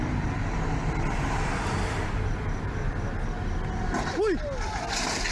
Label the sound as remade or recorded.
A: recorded